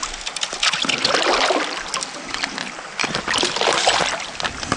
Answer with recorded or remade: recorded